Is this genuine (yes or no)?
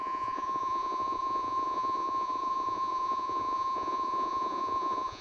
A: no